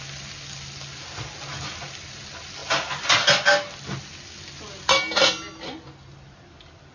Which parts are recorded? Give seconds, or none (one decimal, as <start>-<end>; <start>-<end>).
0.0-6.9